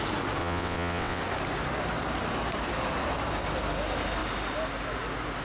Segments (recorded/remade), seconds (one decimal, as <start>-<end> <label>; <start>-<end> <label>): 0.0-0.4 recorded; 0.4-1.2 remade; 1.2-5.4 recorded